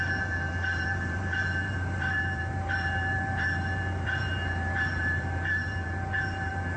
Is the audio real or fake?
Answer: fake